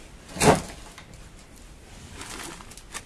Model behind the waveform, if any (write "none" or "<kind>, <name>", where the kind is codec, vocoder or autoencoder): none